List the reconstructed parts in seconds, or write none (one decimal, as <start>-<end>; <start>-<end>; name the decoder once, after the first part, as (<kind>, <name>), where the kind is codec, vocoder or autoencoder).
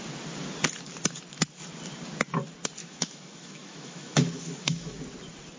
2.8-5.0 (autoencoder, DAC-VAE)